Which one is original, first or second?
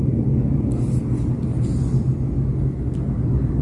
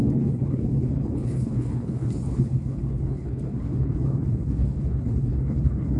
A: first